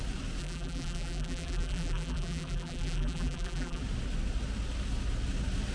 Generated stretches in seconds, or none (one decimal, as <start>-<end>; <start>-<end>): 0.4-3.8